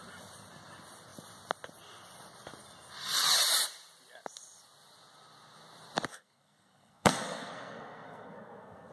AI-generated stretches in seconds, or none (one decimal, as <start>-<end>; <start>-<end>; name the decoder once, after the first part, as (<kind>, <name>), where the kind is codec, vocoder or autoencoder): 6.1-8.9 (codec, SNAC)